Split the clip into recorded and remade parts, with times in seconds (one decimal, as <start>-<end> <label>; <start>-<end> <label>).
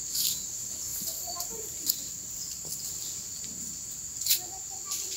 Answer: 0.0-0.9 recorded; 0.9-3.4 remade; 3.4-5.2 recorded